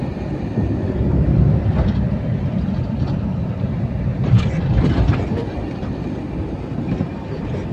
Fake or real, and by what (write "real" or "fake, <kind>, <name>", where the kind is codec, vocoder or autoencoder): fake, vocoder, BigVGAN v2